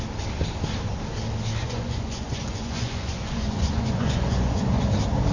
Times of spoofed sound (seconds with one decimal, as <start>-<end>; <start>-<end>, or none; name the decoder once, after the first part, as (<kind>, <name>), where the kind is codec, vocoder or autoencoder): 1.6-4.8 (vocoder, Vocos)